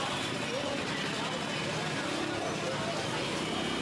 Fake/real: real